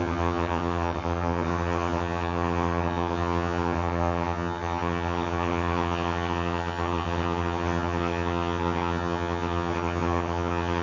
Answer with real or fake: fake